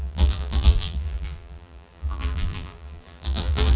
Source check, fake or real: fake